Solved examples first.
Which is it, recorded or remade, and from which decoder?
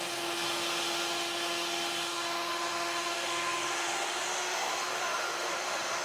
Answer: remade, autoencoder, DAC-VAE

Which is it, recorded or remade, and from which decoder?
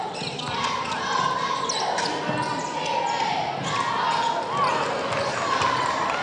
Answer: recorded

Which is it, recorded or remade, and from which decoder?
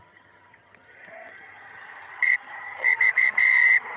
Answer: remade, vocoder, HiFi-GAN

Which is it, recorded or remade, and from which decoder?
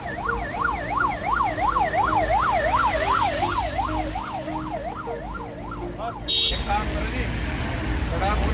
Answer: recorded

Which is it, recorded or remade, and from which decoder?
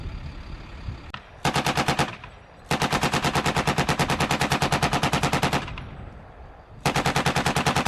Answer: recorded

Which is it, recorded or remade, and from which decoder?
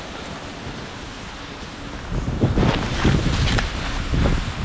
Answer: recorded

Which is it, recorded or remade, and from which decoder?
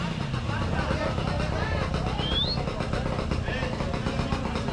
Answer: recorded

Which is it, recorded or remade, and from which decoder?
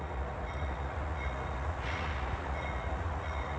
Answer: remade, vocoder, Vocos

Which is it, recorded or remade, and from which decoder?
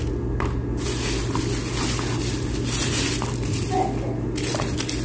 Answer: recorded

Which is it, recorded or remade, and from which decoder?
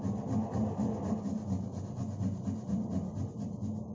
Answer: recorded